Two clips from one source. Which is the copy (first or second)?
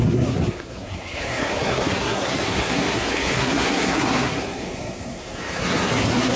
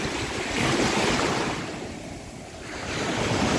first